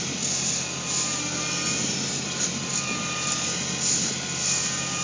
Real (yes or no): yes